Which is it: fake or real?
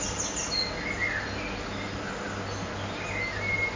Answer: real